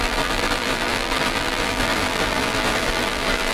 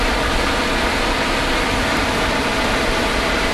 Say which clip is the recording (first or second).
second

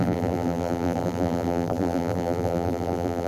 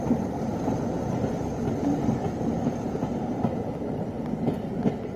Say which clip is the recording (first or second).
second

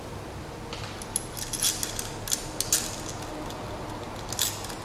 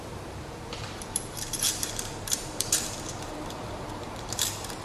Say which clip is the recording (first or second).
first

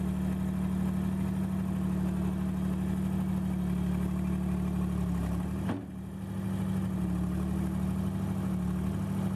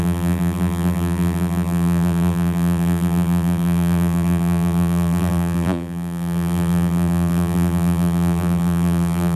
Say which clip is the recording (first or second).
first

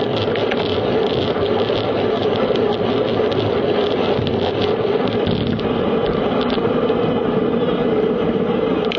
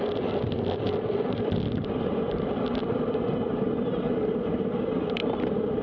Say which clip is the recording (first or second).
first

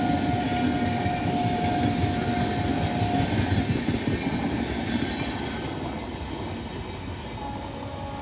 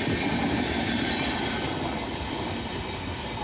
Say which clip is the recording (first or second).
first